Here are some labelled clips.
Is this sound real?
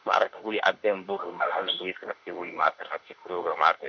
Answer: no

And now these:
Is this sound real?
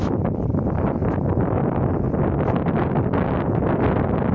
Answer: yes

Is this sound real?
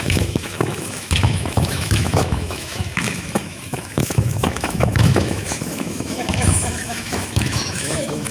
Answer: no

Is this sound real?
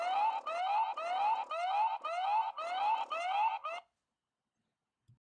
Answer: yes